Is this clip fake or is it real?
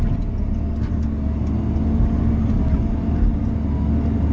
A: real